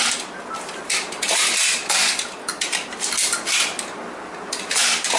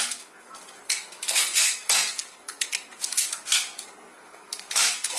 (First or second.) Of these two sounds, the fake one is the second